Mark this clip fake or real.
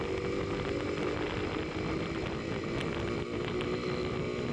real